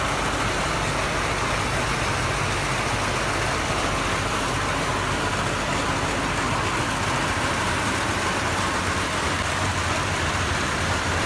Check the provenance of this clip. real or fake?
real